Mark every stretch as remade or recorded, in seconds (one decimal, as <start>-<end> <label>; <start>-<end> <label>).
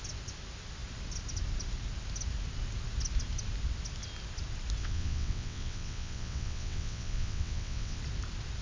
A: 0.0-4.8 recorded; 4.8-8.0 remade; 8.0-8.6 recorded